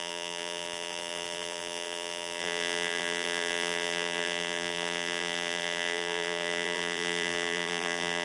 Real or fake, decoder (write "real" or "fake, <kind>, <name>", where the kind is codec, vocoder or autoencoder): fake, vocoder, BigVGAN v2